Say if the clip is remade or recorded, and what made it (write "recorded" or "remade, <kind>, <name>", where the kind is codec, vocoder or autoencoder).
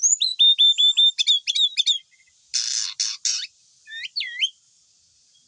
recorded